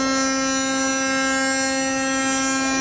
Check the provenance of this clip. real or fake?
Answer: real